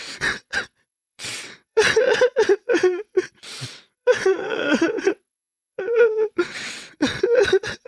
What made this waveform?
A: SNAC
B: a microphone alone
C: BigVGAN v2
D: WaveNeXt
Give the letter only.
D